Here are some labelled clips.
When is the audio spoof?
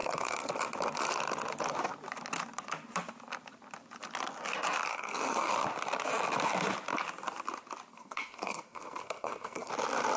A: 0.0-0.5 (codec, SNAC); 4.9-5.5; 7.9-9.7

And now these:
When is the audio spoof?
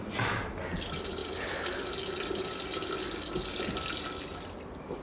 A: none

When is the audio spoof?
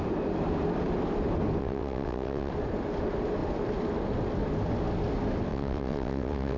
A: 1.6-2.5 (vocoder, WaveNeXt); 5.5-6.6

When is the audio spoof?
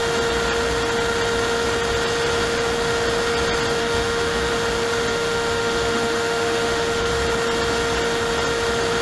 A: 3.8-4.5 (autoencoder, DAC-VAE); 5.1-7.1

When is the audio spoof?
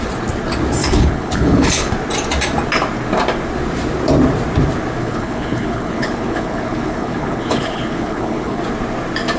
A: 0.8-1.9 (codec, HILCodec); 5.0-8.6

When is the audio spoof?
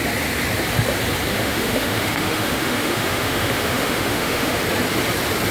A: 1.3-4.6 (autoencoder, DAC-VAE)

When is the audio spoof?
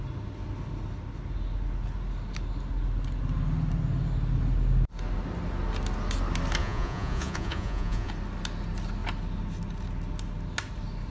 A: 6.6-8.1 (vocoder, Vocos)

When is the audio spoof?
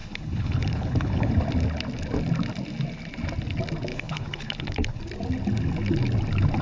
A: 0.0-1.3 (codec, HILCodec); 3.9-5.0